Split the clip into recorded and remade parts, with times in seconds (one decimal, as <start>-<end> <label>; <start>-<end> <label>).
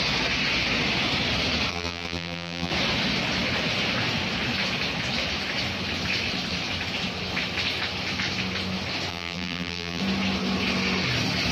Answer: 0.0-1.7 recorded; 1.7-2.7 remade; 2.7-9.1 recorded; 9.1-10.0 remade; 10.0-11.5 recorded